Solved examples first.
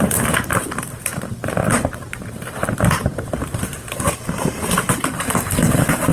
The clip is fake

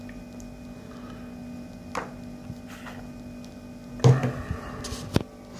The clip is real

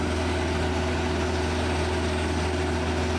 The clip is real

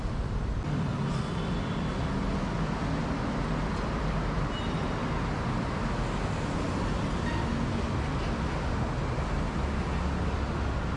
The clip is real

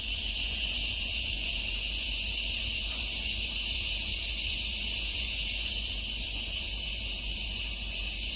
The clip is fake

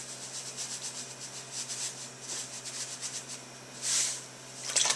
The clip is real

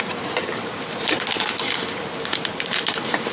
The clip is real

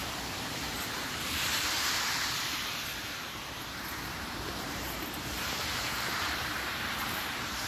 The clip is fake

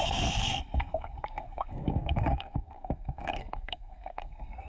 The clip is fake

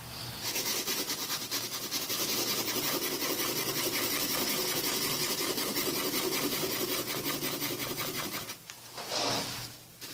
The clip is real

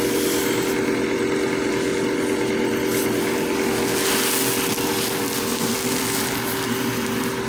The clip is real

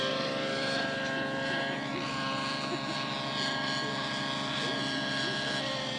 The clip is real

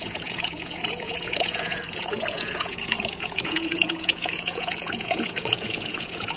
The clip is fake